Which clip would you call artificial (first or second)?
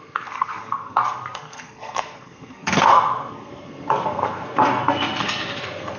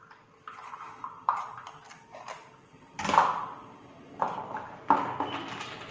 first